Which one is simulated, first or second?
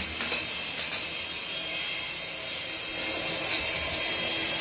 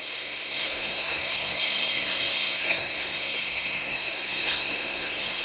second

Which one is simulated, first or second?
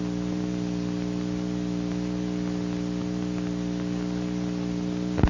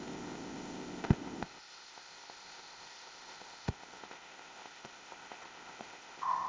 second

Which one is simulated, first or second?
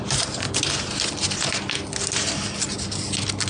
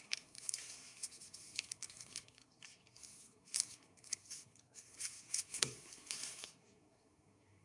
second